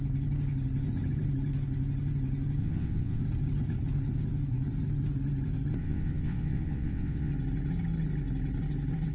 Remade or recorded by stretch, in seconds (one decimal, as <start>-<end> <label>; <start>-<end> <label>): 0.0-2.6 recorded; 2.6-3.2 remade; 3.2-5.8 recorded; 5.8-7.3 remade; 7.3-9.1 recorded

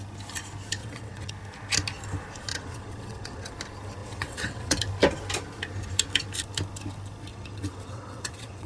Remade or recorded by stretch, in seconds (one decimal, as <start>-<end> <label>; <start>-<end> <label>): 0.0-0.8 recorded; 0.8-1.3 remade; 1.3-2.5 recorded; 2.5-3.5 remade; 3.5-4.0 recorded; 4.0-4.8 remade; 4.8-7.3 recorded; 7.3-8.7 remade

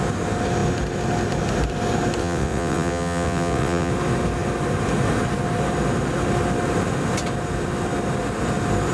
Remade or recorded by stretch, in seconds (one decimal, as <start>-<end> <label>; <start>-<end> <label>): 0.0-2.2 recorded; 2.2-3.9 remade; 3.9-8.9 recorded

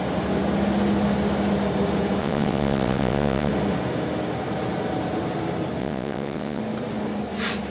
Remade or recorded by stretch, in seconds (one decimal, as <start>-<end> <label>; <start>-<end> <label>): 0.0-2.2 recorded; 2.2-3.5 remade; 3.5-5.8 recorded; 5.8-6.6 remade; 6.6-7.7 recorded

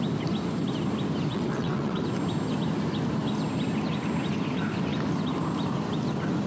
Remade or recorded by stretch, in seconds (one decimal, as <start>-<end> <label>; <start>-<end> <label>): 0.0-1.3 recorded; 1.3-2.0 remade; 2.0-6.5 recorded